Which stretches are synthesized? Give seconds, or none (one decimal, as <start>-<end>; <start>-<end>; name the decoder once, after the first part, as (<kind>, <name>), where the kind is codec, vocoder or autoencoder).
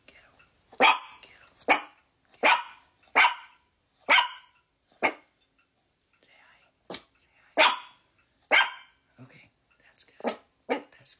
2.4-6.7 (vocoder, BigVGAN v2); 10.2-10.7